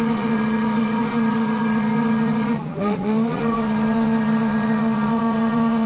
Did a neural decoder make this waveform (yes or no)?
yes